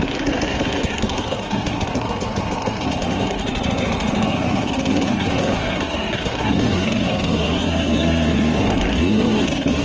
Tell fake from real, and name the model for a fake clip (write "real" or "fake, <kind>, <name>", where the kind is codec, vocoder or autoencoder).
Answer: fake, codec, SNAC